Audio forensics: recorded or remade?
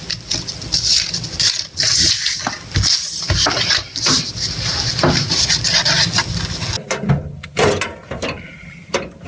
recorded